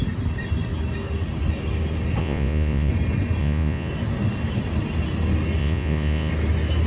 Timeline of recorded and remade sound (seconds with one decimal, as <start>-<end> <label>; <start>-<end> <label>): 0.0-2.2 recorded; 2.2-2.9 remade; 2.9-3.4 recorded; 3.4-3.9 remade; 3.9-5.6 recorded; 5.6-6.3 remade; 6.3-6.9 recorded